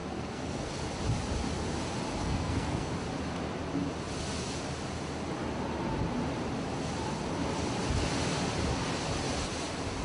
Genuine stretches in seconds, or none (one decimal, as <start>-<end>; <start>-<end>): 0.7-2.2; 2.9-10.0